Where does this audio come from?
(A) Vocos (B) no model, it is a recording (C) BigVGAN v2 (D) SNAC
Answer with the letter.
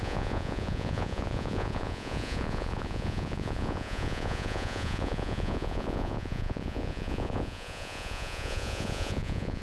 A